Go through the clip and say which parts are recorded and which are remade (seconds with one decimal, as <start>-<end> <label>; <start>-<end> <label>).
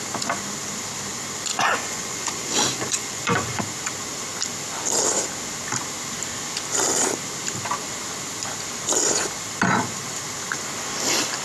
0.0-1.5 recorded; 1.5-3.6 remade; 3.6-11.4 recorded